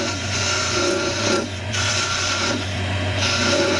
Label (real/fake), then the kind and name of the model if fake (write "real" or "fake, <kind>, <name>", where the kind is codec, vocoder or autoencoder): fake, vocoder, Vocos